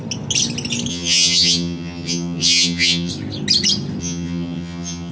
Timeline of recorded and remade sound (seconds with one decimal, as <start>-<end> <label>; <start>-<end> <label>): 0.0-0.9 recorded; 0.9-3.1 remade; 3.1-4.0 recorded; 4.0-5.1 remade